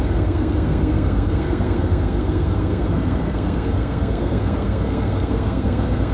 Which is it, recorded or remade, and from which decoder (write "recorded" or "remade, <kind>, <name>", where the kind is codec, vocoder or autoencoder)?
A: remade, codec, SNAC